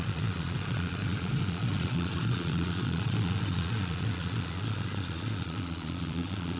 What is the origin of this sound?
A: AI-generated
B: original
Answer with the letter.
A